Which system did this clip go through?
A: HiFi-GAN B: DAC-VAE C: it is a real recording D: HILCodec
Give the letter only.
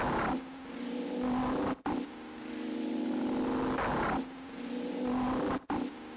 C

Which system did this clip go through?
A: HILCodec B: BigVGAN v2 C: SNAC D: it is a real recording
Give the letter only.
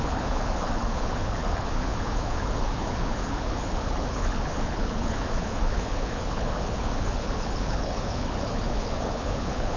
A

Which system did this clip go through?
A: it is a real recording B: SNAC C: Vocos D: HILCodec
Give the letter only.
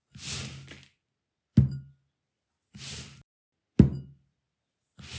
A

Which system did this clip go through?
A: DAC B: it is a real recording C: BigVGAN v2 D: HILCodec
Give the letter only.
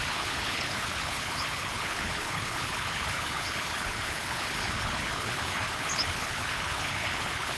D